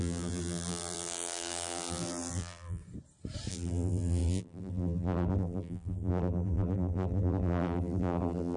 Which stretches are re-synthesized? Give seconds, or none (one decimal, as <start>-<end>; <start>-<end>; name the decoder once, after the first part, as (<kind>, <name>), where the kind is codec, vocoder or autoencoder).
0.0-2.8 (vocoder, BigVGAN v2); 3.5-8.6